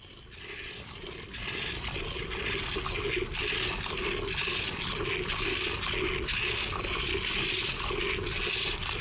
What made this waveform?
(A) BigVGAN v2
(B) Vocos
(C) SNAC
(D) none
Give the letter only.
D